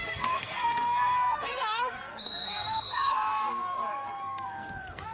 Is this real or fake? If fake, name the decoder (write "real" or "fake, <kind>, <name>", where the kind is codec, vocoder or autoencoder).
fake, codec, SNAC